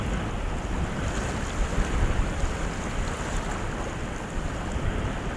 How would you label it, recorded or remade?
recorded